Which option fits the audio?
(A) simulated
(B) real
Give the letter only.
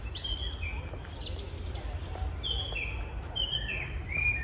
B